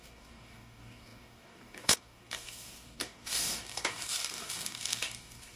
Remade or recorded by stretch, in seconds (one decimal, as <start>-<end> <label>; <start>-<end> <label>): 0.0-5.6 remade

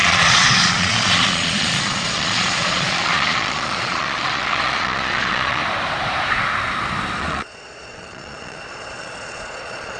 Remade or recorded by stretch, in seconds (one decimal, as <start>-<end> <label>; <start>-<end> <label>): 0.0-5.6 remade; 5.6-7.2 recorded; 7.2-10.0 remade